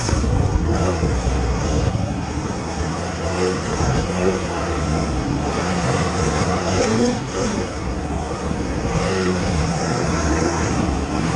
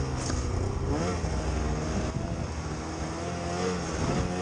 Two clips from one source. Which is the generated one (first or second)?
first